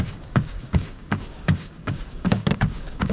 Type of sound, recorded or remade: remade